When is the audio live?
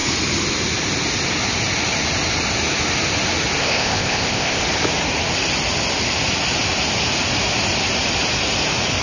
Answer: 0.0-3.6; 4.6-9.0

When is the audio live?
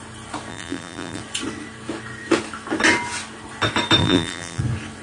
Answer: 0.0-0.5; 1.2-4.0; 4.6-5.0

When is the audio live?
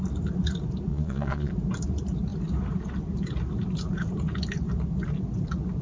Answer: 0.0-0.9; 1.5-5.8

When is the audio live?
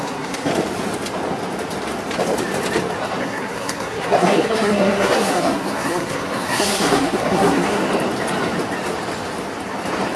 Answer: 0.5-3.2; 7.8-10.2